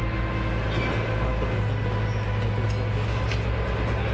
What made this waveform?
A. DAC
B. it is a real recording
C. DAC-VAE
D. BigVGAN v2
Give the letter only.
B